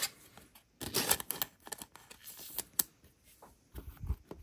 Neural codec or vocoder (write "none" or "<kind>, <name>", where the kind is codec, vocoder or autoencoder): none